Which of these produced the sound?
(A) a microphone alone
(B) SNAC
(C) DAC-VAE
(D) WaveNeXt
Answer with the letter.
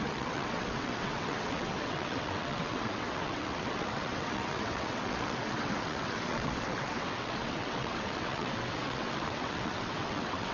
D